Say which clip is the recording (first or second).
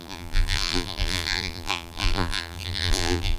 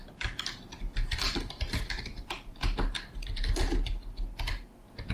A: second